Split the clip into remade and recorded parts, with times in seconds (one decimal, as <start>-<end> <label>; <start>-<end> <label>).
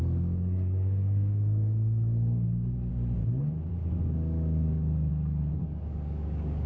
0.0-2.9 remade; 2.9-3.7 recorded; 3.7-6.7 remade